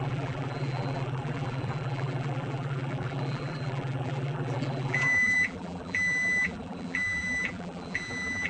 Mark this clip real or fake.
fake